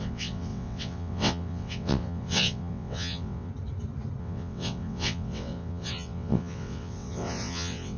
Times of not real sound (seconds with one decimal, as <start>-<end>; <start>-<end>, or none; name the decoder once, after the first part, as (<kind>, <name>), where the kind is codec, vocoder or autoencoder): 0.0-3.5 (vocoder, WaveNeXt); 4.2-8.0